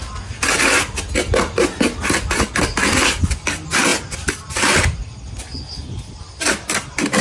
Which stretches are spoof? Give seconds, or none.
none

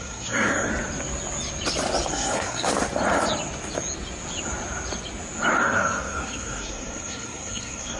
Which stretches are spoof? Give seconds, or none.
0.0-0.7; 2.1-2.7; 5.6-8.0

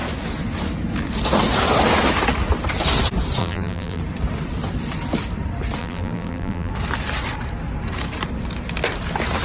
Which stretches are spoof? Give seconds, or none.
3.4-4.0; 5.8-6.7